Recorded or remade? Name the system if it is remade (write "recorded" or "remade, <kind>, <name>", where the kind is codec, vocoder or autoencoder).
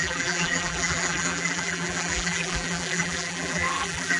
remade, vocoder, BigVGAN v2